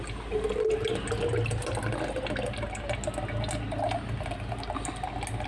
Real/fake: real